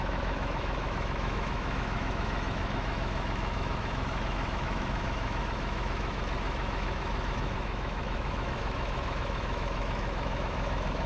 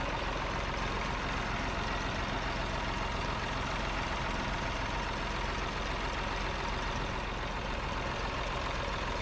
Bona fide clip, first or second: second